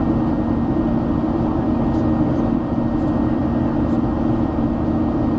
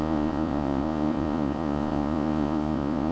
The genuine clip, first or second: first